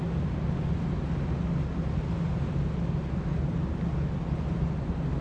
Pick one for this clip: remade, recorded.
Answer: recorded